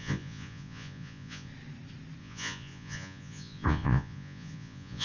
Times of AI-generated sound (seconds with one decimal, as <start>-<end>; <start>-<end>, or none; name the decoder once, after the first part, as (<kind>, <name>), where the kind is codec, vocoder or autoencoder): 0.0-1.5 (vocoder, Vocos); 2.2-5.0